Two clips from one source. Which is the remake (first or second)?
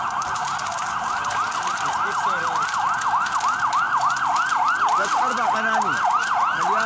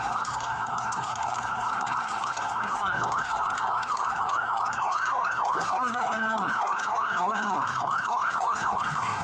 second